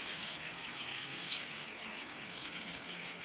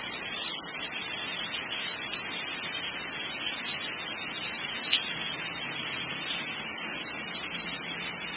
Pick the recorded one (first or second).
second